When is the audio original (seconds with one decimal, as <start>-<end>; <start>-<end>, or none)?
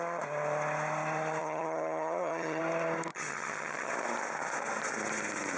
0.0-1.4; 2.6-3.1; 3.9-5.6